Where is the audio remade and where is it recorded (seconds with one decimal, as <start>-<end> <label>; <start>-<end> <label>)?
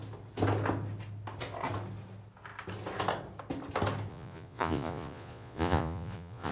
0.0-4.1 recorded; 4.1-6.5 remade